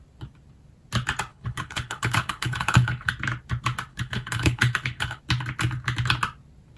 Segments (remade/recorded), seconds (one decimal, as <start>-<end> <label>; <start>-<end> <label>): 0.0-1.3 recorded; 1.3-3.1 remade; 3.1-3.9 recorded; 3.9-5.2 remade; 5.2-6.8 recorded